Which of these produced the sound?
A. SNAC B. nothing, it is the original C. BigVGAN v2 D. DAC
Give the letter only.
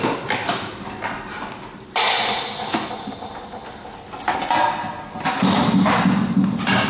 B